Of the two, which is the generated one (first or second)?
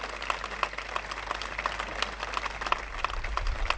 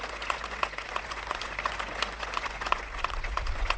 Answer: second